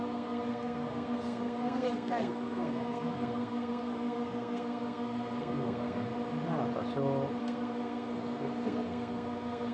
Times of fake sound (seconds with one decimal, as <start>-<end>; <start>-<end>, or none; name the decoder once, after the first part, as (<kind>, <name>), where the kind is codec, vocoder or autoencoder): 0.0-6.1 (codec, SNAC); 7.4-9.7